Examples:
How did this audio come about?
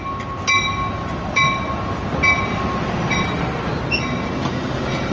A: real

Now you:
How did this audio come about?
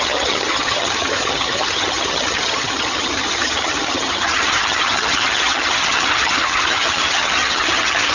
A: fake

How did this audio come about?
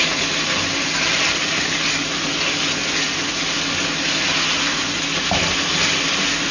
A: real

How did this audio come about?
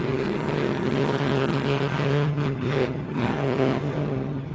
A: fake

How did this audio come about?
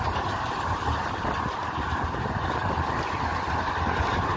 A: real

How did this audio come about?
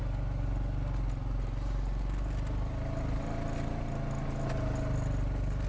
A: real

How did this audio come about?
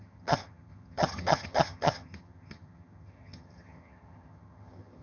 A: fake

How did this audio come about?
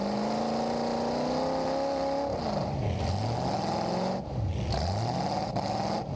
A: real